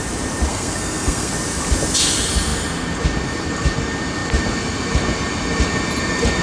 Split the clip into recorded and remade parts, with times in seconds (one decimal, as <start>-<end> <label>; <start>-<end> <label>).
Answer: 0.0-0.5 recorded; 0.5-1.3 remade; 1.3-6.4 recorded